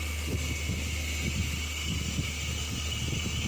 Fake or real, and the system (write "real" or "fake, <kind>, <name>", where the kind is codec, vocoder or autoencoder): real